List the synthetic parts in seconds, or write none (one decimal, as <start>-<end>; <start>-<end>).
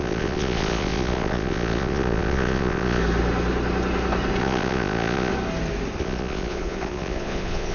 0.0-3.0; 4.4-5.3; 6.0-7.7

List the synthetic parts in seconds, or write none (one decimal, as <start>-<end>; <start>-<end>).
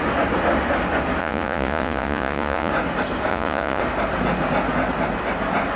1.2-2.7; 3.3-3.8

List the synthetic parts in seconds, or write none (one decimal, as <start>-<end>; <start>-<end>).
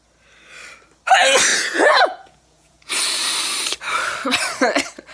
1.5-2.9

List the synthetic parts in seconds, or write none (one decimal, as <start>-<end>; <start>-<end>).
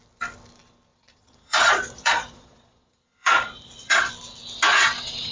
0.9-4.1; 4.7-5.3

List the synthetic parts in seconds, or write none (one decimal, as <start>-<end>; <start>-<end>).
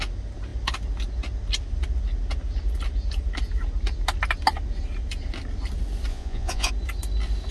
6.1-6.7